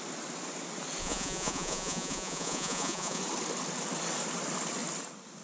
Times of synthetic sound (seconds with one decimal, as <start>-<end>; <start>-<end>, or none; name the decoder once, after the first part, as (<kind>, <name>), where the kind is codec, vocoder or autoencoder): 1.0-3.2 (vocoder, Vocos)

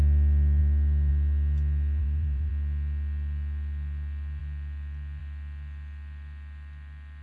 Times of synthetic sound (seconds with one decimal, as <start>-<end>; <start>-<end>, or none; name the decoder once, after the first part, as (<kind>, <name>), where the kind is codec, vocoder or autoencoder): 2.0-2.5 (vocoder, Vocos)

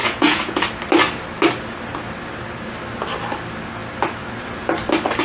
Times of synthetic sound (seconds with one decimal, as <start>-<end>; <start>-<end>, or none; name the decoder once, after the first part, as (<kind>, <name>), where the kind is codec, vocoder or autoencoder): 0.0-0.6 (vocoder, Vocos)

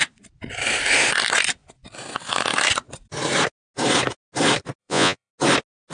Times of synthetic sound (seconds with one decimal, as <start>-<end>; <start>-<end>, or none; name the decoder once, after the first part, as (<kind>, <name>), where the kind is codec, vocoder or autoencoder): 4.8-5.3 (vocoder, Vocos)